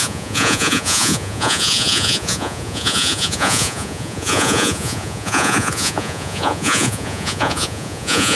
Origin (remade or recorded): remade